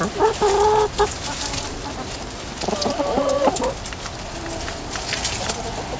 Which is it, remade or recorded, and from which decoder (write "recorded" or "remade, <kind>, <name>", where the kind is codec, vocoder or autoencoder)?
recorded